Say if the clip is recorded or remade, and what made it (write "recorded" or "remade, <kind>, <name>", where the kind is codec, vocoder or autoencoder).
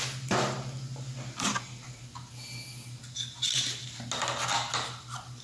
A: recorded